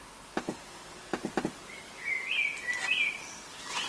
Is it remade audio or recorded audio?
recorded